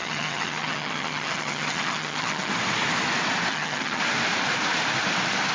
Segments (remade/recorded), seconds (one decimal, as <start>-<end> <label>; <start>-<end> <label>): 0.0-2.5 remade; 2.5-3.5 recorded; 3.5-4.0 remade; 4.0-5.5 recorded